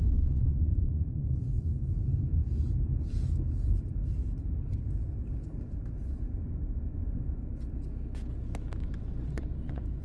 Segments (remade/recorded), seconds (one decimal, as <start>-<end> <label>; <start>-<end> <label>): 0.0-1.7 remade; 1.7-6.1 recorded; 6.1-7.4 remade; 7.4-8.8 recorded; 8.8-10.0 remade